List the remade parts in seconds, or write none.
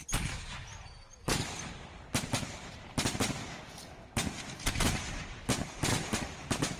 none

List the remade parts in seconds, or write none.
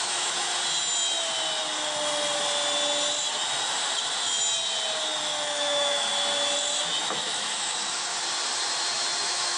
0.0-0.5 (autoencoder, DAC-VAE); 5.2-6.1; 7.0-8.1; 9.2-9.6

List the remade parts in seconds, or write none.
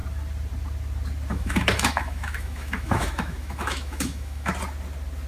1.3-4.5 (autoencoder, DAC-VAE)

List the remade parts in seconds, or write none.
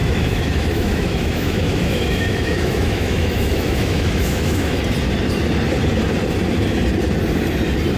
0.0-4.8 (autoencoder, DAC-VAE)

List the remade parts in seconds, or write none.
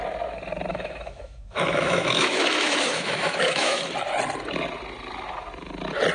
0.7-3.8 (autoencoder, DAC-VAE)